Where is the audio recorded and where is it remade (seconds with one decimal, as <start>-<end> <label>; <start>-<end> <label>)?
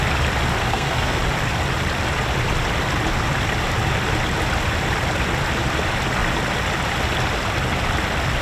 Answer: 0.0-0.6 recorded; 0.6-1.2 remade; 1.2-8.4 recorded